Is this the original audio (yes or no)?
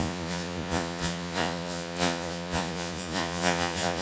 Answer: no